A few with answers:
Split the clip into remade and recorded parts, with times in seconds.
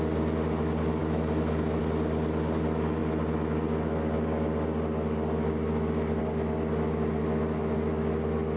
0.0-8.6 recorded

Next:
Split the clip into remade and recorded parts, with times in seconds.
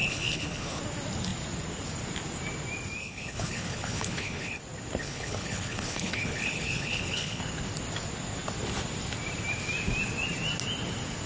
0.0-0.8 remade; 0.8-3.0 recorded; 3.0-4.6 remade; 4.6-5.0 recorded; 5.0-7.4 remade; 7.4-11.3 recorded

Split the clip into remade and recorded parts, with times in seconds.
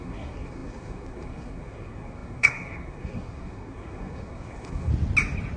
0.0-4.9 remade; 4.9-5.6 recorded